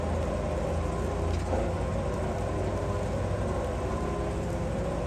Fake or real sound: real